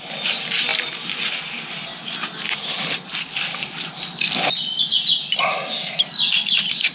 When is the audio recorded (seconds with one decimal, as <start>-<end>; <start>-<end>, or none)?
0.0-6.9